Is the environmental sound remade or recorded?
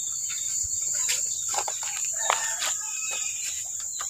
remade